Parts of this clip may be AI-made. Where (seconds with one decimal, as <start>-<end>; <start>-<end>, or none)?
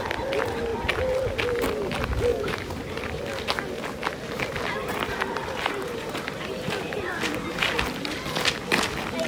2.3-3.2; 4.8-6.9